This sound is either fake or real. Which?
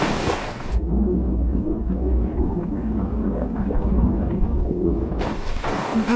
fake